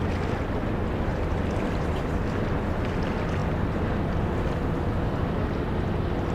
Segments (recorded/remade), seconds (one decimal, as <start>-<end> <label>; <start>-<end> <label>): 0.0-1.1 recorded; 1.1-2.1 remade; 2.1-6.3 recorded